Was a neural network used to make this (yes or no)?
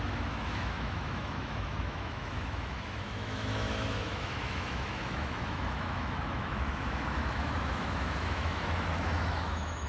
yes